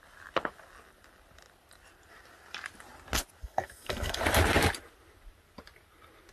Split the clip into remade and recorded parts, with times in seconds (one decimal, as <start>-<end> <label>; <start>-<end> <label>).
0.0-3.4 recorded; 3.4-4.2 remade; 4.2-6.3 recorded